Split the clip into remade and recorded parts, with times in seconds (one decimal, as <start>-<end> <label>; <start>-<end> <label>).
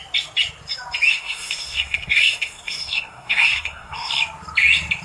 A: 0.0-1.1 recorded; 1.1-4.1 remade; 4.1-5.0 recorded